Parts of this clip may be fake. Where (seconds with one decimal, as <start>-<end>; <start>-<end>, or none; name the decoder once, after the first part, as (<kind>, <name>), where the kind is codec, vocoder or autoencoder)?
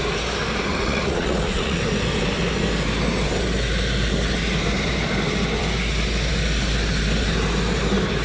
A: 0.7-1.8 (vocoder, Vocos)